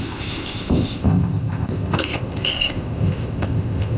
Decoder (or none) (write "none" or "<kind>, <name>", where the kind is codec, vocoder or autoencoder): codec, ZipCodec